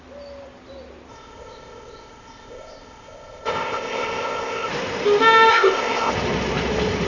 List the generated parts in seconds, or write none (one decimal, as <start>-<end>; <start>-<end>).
1.1-4.7; 5.5-6.1